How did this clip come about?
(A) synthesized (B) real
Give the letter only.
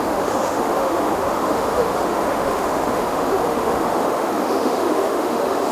A